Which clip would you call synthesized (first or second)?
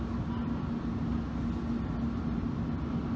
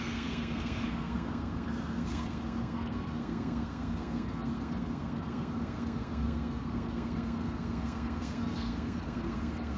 second